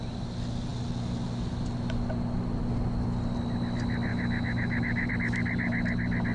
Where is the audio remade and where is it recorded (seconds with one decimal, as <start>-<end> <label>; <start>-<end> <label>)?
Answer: 0.0-4.1 recorded; 4.1-5.1 remade; 5.1-6.3 recorded